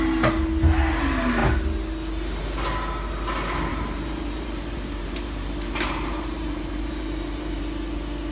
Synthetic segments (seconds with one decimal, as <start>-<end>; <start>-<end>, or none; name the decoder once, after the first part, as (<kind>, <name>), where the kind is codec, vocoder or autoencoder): 3.7-7.6 (vocoder, BigVGAN v2)